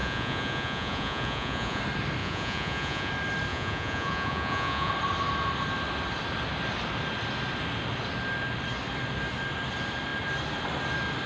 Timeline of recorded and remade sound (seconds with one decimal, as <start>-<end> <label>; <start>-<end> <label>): 0.0-1.8 remade; 1.8-2.2 recorded; 2.2-3.1 remade; 3.1-3.5 recorded; 3.5-4.9 remade; 4.9-11.3 recorded